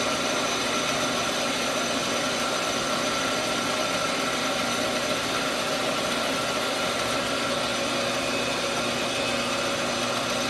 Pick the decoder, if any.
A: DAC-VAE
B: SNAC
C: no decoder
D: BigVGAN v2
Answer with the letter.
C